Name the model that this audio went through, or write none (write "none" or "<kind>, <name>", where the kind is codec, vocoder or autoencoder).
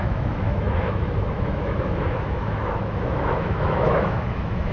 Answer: autoencoder, DAC-VAE